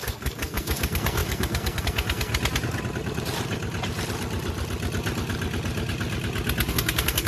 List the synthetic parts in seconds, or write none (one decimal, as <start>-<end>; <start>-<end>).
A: 0.0-2.3; 6.7-7.3